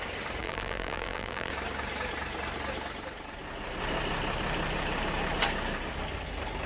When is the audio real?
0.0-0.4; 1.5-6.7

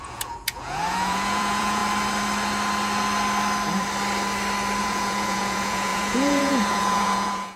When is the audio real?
1.8-4.8